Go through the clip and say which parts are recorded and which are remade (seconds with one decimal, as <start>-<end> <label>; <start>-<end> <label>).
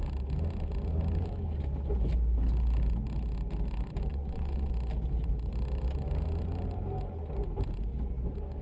0.0-4.1 recorded; 4.1-4.7 remade; 4.7-8.6 recorded